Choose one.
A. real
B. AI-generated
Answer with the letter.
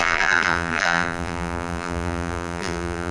B